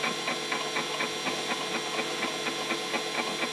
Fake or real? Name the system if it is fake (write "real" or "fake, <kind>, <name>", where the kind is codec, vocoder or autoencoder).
real